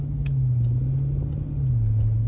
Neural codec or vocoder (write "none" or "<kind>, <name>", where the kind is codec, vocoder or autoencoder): none